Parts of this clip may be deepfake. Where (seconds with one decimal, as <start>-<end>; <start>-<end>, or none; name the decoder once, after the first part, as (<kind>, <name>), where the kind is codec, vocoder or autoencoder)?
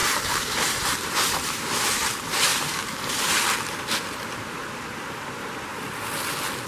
0.0-2.5 (vocoder, BigVGAN v2)